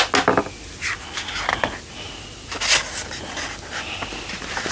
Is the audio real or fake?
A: real